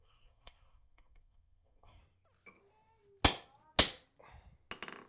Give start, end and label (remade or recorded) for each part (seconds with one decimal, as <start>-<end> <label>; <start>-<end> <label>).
0.0-2.0 remade; 2.0-5.1 recorded